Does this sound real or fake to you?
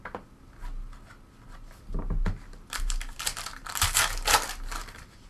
real